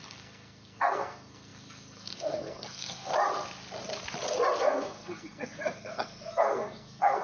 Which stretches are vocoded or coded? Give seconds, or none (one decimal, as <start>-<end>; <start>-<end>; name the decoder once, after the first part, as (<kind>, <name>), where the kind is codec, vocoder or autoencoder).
0.0-3.1 (codec, SNAC); 4.6-7.2